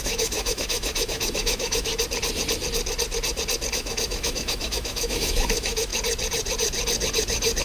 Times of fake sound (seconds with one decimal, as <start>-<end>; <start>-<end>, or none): 0.0-1.9; 3.7-5.9